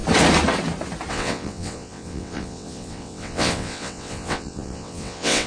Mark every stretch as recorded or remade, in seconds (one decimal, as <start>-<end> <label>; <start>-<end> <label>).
0.0-1.1 recorded; 1.1-5.5 remade